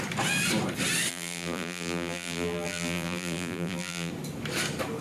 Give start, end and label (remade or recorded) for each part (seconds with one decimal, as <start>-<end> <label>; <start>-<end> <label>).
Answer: 0.0-1.1 recorded; 1.1-4.1 remade; 4.1-5.0 recorded